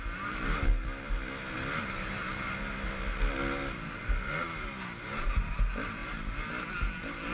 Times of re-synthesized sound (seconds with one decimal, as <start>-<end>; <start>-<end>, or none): none